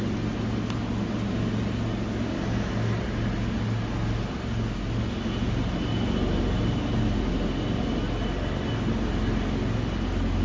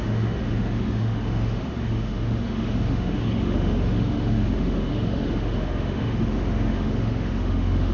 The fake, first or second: second